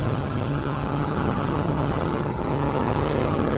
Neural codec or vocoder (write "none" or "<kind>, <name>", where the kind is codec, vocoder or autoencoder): vocoder, HiFi-GAN